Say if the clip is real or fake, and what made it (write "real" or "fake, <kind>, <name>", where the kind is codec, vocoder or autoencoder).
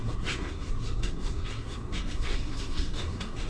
fake, codec, SNAC